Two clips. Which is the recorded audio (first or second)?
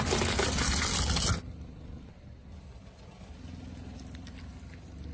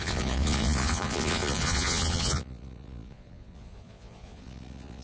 first